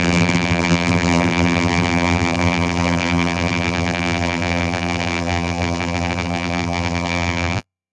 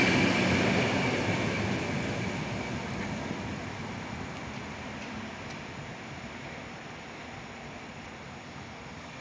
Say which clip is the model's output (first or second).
first